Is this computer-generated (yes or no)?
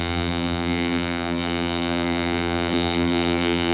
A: yes